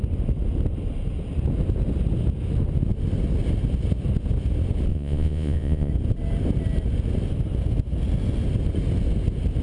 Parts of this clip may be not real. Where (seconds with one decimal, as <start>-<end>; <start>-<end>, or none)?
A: 4.9-5.9